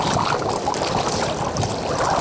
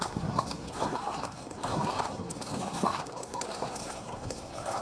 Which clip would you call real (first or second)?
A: first